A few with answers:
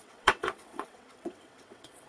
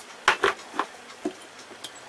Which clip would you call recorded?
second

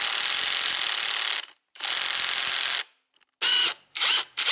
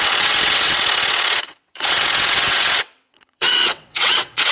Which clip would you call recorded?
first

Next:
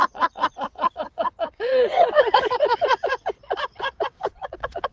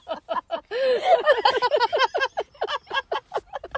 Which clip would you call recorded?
second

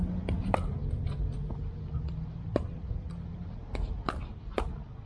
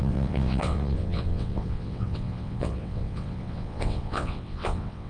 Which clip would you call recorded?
first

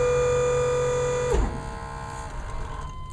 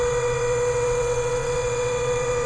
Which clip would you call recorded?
first